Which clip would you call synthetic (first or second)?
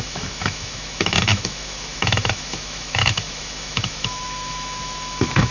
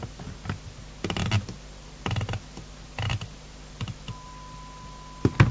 first